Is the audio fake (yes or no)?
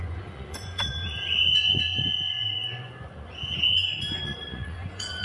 yes